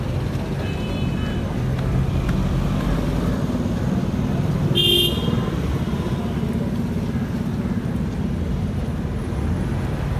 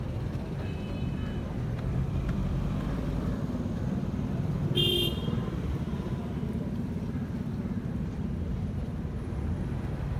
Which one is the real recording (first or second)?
first